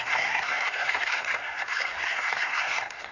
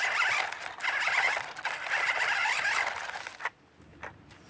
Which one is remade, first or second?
first